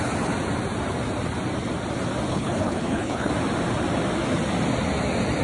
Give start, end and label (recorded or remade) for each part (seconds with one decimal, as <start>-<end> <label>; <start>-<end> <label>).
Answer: 0.0-2.3 recorded; 2.3-3.3 remade; 3.3-5.4 recorded